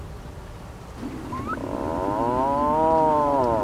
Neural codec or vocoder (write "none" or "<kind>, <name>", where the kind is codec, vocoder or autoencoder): none